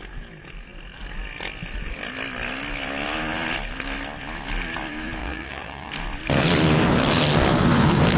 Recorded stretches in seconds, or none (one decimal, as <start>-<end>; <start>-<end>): 0.0-5.2; 5.9-8.2